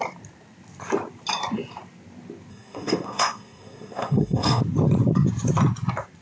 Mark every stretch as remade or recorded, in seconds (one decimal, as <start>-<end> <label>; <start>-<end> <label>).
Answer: 0.0-2.5 recorded; 2.5-4.6 remade; 4.6-6.2 recorded